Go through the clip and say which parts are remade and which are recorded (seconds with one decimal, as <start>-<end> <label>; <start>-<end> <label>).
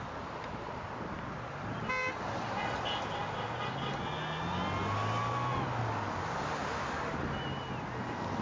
0.0-8.4 recorded